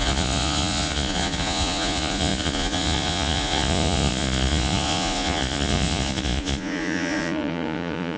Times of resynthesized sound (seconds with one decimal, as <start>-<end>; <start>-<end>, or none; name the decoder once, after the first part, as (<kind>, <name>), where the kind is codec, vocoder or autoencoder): 0.0-8.2 (vocoder, Vocos)